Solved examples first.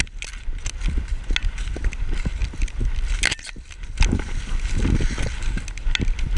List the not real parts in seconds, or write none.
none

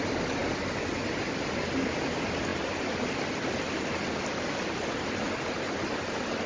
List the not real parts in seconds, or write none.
none

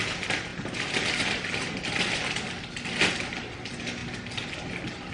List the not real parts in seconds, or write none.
0.5-2.3 (vocoder, BigVGAN v2)

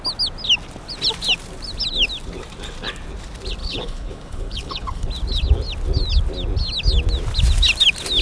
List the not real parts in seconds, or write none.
3.6-5.1 (codec, HILCodec)